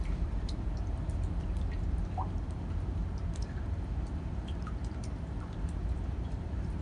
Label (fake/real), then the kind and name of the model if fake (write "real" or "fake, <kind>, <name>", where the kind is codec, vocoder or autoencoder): fake, vocoder, BigVGAN v2